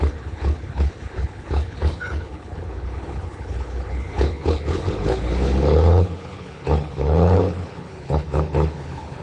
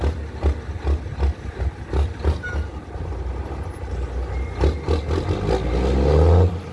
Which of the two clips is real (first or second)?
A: second